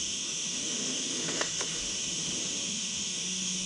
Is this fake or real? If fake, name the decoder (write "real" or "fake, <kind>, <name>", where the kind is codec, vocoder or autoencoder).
fake, autoencoder, DAC-VAE